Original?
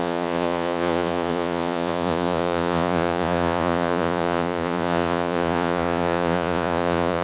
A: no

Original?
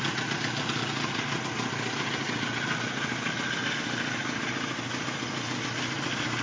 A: yes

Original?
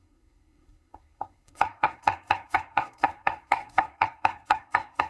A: no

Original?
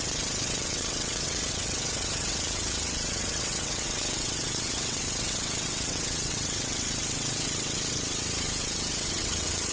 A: no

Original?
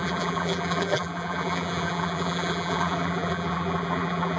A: no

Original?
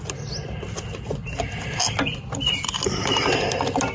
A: yes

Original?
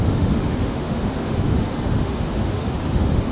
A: no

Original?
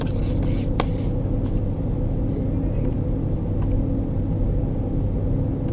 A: yes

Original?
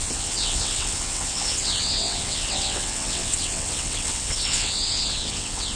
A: no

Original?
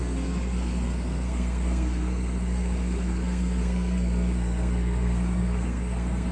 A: no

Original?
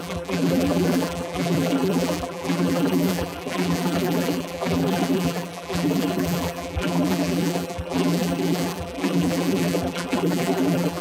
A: no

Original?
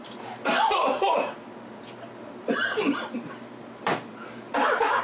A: no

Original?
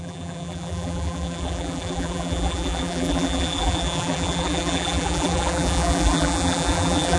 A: no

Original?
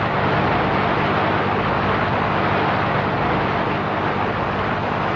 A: yes